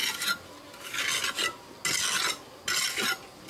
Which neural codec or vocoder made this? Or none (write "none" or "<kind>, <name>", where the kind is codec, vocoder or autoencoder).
none